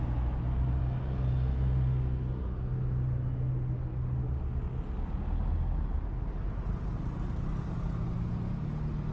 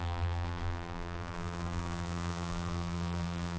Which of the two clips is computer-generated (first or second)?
second